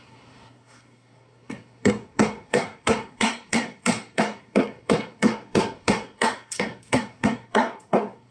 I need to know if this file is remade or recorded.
remade